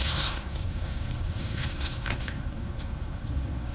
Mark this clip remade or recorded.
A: remade